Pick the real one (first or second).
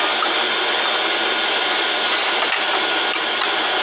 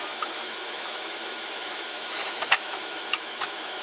first